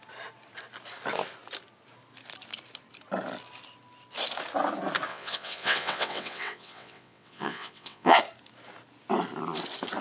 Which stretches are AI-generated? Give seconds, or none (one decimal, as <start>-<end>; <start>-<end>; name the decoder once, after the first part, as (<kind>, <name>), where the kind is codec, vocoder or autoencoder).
5.1-8.2 (vocoder, WaveNeXt)

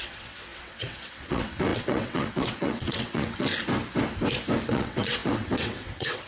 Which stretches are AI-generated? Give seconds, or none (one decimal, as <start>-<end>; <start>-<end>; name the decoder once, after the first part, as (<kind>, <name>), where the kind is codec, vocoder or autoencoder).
0.0-3.5 (vocoder, WaveNeXt); 4.7-6.3

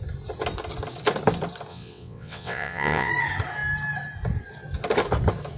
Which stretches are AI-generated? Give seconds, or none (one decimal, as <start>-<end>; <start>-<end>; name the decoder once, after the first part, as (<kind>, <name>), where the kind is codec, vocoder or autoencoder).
1.7-3.1 (vocoder, WaveNeXt)